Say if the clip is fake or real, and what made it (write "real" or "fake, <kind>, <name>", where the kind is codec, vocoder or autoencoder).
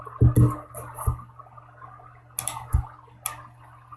real